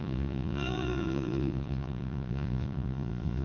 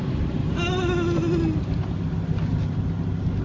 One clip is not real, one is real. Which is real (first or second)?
second